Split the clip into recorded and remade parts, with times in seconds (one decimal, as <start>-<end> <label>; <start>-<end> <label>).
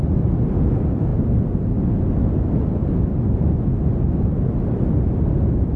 0.0-5.8 recorded